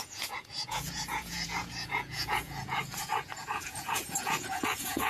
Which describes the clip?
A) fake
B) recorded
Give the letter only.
A